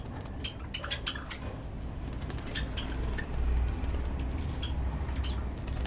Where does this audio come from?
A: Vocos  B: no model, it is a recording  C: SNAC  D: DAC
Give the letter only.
B